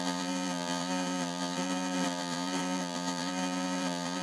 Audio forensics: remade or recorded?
remade